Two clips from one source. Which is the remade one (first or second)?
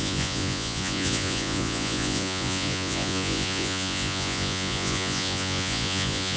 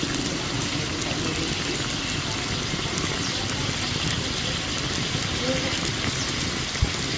first